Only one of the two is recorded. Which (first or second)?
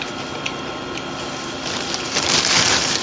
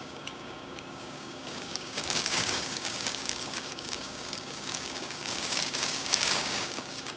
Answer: first